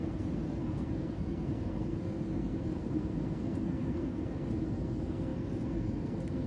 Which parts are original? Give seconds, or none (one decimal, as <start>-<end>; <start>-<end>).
none